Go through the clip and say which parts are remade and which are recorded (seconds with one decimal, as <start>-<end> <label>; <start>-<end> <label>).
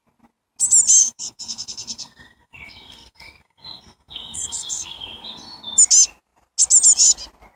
0.0-1.0 recorded; 1.0-5.6 remade; 5.6-7.6 recorded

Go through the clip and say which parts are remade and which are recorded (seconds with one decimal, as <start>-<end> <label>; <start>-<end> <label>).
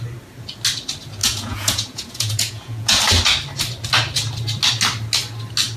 0.0-1.2 recorded; 1.2-3.0 remade; 3.0-5.8 recorded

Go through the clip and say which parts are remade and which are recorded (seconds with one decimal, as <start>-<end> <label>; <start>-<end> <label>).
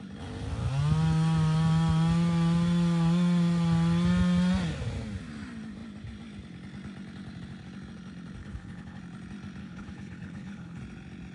0.0-8.4 recorded; 8.4-9.0 remade; 9.0-9.6 recorded; 9.6-10.8 remade; 10.8-11.3 recorded